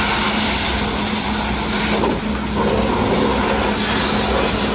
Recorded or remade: recorded